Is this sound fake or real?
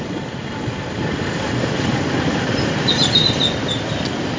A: real